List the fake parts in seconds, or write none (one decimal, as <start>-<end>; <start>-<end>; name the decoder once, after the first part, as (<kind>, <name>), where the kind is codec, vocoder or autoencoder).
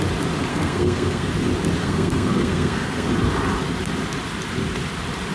0.5-1.3 (codec, SNAC); 1.8-3.1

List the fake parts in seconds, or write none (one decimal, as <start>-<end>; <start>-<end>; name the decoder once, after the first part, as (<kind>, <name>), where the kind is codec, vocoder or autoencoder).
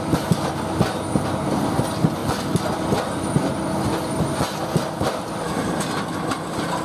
none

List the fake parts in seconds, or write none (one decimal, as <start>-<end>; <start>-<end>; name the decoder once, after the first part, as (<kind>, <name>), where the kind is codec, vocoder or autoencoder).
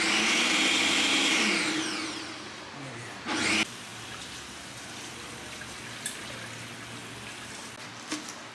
none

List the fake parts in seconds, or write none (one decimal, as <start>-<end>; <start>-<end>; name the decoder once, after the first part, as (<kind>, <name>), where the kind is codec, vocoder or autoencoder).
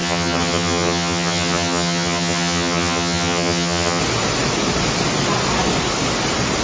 0.0-4.0 (vocoder, HiFi-GAN)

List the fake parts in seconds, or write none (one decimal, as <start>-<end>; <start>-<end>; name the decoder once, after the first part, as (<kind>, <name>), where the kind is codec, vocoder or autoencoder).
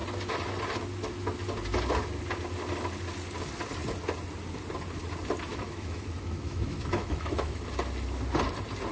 5.5-7.7 (autoencoder, DAC-VAE)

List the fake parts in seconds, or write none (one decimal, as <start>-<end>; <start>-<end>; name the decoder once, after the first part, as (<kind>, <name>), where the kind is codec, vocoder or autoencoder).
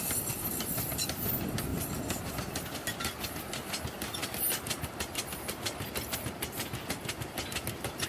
none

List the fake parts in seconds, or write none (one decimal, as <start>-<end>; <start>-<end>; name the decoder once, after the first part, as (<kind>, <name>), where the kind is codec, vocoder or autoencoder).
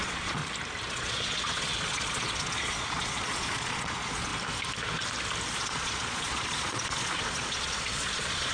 0.0-0.4 (vocoder, Vocos); 0.9-4.3; 5.5-8.5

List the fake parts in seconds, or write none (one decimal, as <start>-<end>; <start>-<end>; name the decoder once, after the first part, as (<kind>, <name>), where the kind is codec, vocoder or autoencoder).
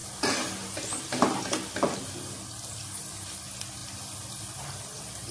3.8-5.3 (vocoder, BigVGAN v2)